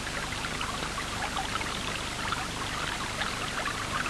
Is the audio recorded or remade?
recorded